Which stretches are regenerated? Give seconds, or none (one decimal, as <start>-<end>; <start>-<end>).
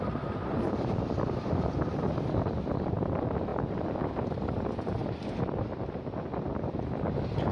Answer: 0.0-3.5; 4.1-7.5